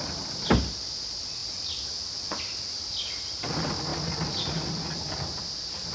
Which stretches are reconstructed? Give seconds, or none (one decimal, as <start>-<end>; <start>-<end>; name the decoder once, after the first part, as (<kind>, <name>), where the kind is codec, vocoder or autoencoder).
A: none